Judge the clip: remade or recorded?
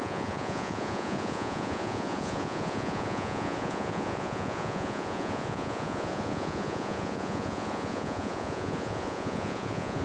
remade